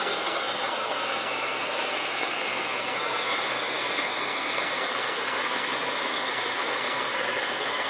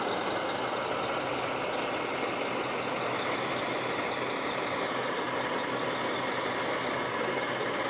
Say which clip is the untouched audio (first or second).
second